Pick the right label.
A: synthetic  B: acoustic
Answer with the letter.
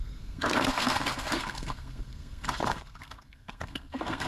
A